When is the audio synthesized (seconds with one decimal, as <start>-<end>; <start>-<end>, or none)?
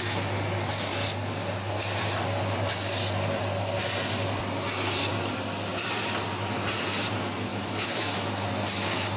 7.5-8.3